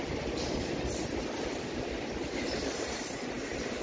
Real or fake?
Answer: real